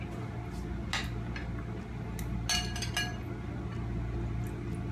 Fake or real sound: real